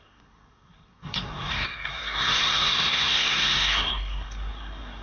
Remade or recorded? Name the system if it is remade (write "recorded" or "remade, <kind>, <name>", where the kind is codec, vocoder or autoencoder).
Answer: remade, codec, SNAC